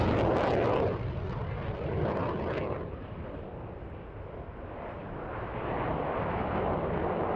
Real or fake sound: real